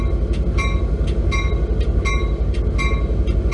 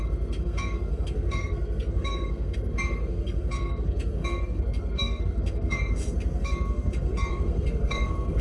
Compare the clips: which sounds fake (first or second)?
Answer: second